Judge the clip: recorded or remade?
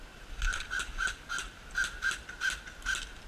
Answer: recorded